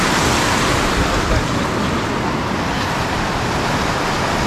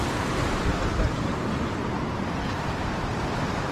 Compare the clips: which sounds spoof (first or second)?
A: second